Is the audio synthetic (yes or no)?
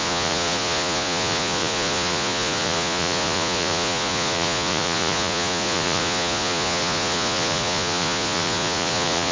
yes